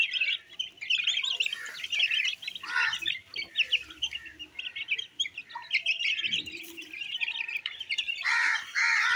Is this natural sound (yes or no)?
yes